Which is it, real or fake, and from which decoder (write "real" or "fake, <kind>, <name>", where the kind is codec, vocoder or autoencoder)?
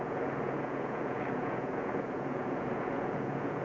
fake, vocoder, Vocos